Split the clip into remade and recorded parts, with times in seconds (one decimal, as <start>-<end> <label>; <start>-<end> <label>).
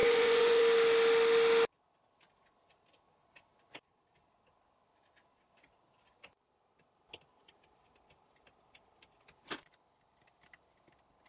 0.0-0.6 remade; 0.6-11.3 recorded